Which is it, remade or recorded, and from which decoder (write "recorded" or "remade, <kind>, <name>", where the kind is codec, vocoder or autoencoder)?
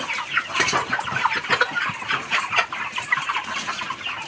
recorded